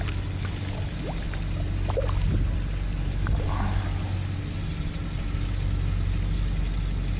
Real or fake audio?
real